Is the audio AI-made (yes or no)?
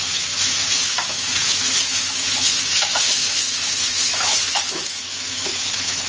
yes